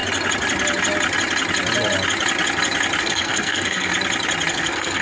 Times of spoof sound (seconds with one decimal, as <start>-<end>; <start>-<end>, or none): 3.0-3.9; 4.5-5.0